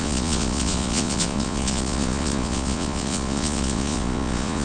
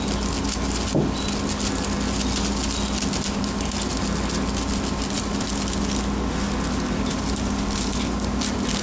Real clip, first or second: second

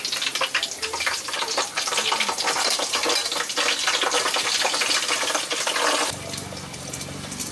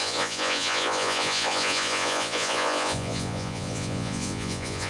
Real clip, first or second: first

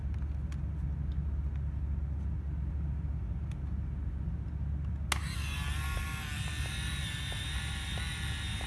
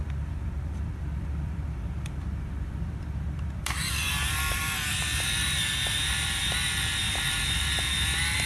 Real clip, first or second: first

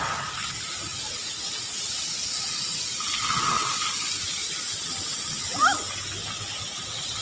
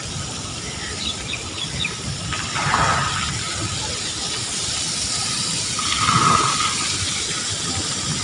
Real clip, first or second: first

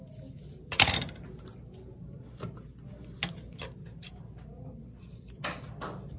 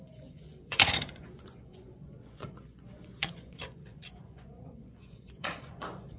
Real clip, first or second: first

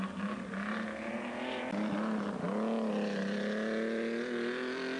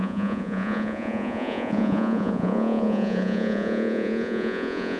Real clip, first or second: first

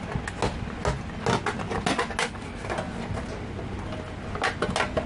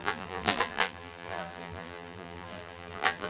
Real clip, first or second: first